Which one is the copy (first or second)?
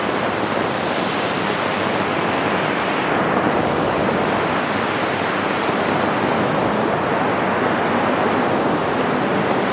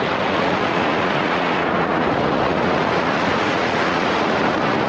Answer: second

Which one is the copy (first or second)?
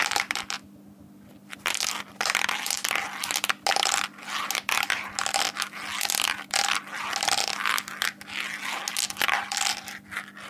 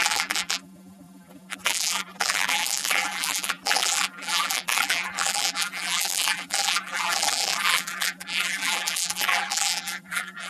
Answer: second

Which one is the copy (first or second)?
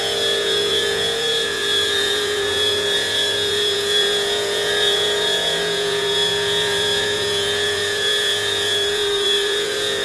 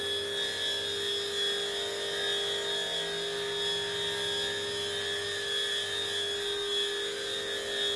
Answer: first